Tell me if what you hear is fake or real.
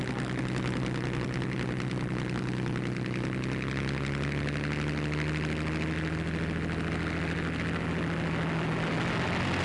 real